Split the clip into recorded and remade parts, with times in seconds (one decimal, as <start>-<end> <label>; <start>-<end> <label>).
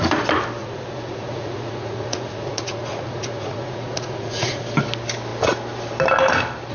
0.0-0.6 recorded; 0.6-4.6 remade; 4.6-6.7 recorded